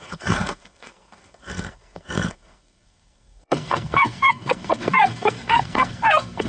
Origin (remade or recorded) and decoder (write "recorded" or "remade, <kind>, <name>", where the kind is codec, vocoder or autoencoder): remade, codec, SNAC